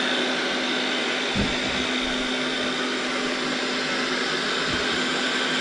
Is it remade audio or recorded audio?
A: recorded